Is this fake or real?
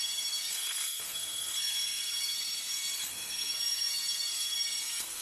fake